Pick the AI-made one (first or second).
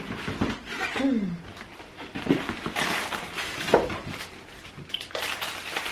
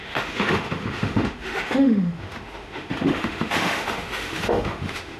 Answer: second